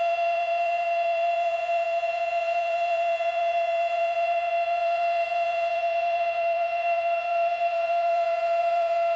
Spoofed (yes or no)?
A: yes